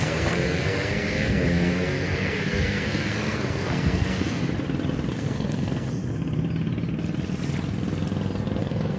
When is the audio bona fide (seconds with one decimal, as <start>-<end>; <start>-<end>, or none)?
4.4-5.1; 6.0-8.6